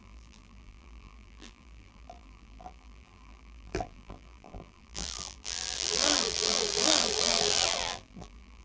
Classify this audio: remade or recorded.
remade